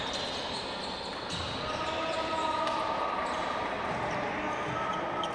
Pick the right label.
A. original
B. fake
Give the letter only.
A